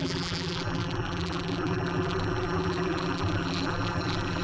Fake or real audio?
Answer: fake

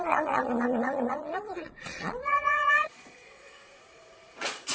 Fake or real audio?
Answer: fake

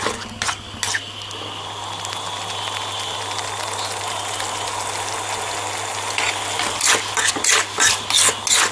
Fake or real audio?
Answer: real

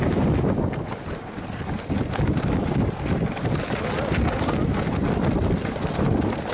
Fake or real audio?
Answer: real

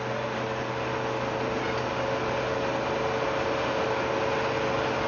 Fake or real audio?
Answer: real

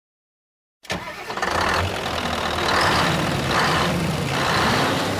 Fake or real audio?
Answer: real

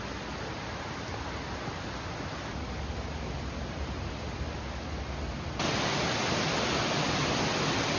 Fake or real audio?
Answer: real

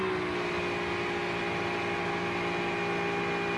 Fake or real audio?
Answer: real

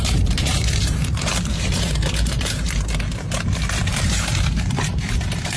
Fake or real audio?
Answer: fake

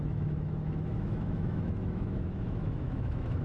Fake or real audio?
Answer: fake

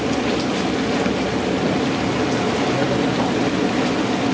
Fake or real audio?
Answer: real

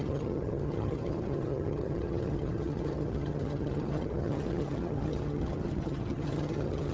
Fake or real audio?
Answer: fake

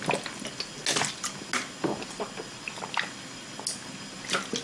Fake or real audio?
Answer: real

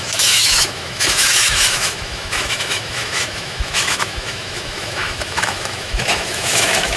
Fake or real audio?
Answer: fake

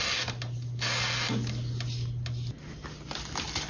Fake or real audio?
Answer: real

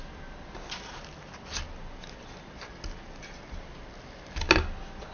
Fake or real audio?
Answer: real